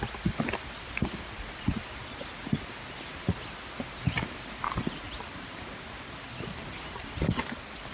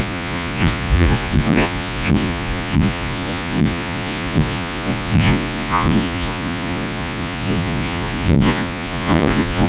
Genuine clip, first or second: first